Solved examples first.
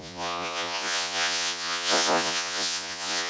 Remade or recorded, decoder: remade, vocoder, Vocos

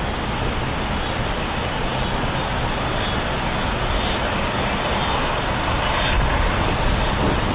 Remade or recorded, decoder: recorded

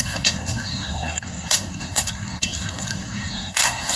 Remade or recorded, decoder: remade, codec, SNAC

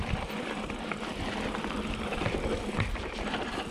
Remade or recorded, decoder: remade, vocoder, BigVGAN v2